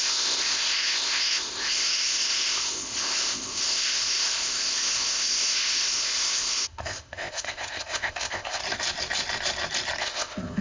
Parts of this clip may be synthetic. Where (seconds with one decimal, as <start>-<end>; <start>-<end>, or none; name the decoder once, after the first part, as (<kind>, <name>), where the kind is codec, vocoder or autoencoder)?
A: 0.0-8.6 (codec, ZipCodec); 10.0-10.6